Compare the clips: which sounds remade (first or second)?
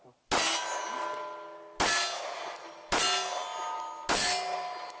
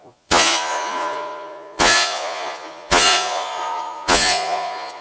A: second